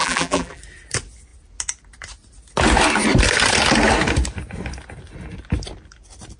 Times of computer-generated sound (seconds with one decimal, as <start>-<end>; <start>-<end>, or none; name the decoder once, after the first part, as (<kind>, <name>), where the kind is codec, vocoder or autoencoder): 0.0-0.6 (vocoder, BigVGAN v2)